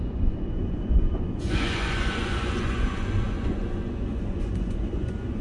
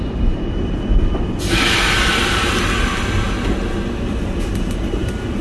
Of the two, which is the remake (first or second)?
first